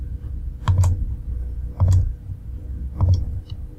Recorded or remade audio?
recorded